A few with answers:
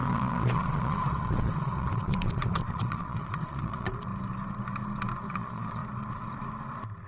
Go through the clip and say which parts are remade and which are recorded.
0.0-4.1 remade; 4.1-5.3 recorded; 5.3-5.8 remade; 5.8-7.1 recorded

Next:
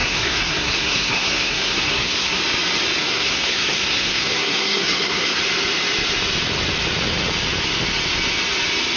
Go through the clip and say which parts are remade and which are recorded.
0.0-2.4 remade; 2.4-3.0 recorded; 3.0-5.4 remade; 5.4-9.0 recorded

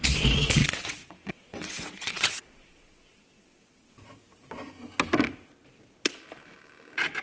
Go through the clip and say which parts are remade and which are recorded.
0.0-0.6 recorded; 0.6-3.9 remade; 3.9-7.2 recorded

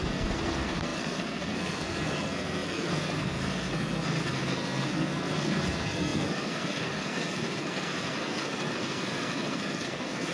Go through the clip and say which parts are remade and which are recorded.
0.0-10.3 remade

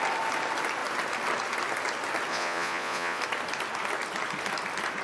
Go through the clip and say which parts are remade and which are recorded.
0.0-2.3 recorded; 2.3-3.2 remade; 3.2-5.0 recorded

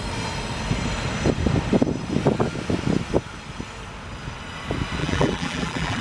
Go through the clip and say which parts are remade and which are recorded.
0.0-5.0 recorded; 5.0-6.0 remade